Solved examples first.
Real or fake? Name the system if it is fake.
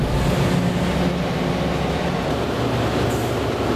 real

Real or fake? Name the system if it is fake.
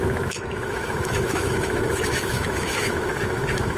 fake, autoencoder, DAC-VAE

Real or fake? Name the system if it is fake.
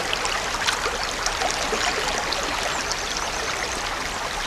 real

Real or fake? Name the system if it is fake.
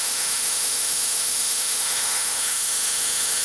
fake, autoencoder, DAC-VAE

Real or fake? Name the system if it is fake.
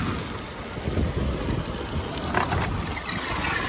real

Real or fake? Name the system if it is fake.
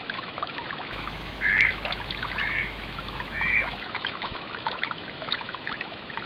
fake, autoencoder, DAC-VAE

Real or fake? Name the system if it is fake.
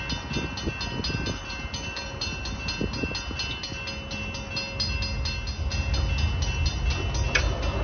real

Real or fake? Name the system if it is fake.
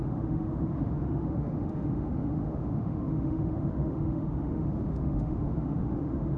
fake, autoencoder, DAC-VAE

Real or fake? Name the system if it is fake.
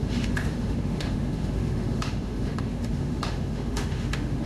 fake, autoencoder, DAC-VAE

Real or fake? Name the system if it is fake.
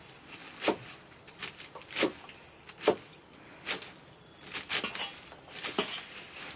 real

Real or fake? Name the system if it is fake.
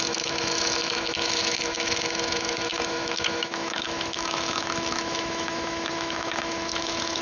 fake, autoencoder, DAC-VAE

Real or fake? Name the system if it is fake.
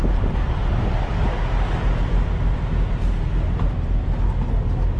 real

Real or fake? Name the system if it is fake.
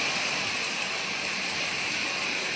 real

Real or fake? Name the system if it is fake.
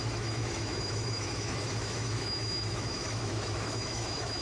fake, autoencoder, DAC-VAE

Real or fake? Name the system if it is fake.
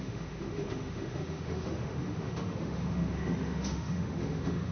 fake, autoencoder, DAC-VAE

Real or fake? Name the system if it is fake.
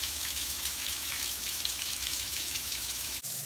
fake, autoencoder, DAC-VAE